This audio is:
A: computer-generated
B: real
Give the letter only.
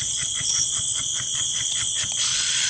A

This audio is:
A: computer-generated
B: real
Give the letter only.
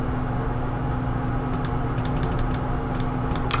B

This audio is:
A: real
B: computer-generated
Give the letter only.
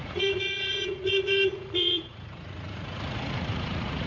B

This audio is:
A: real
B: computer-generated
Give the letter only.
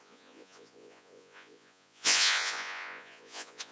B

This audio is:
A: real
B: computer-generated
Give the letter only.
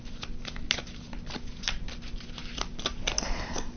A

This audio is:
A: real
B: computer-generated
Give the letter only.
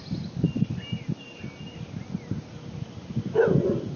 A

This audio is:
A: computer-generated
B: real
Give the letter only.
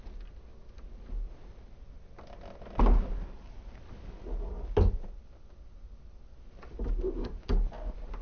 B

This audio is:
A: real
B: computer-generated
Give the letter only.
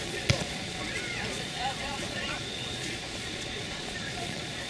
B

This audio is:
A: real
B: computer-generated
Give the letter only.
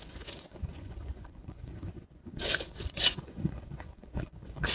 B